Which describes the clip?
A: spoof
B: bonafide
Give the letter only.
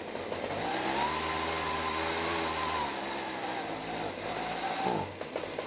B